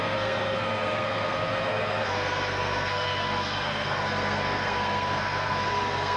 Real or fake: fake